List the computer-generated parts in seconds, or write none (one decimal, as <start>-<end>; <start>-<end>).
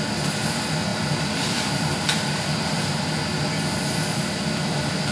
0.9-3.1